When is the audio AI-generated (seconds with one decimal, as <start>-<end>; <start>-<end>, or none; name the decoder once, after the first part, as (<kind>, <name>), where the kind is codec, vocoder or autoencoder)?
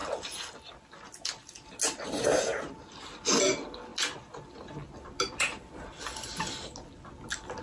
none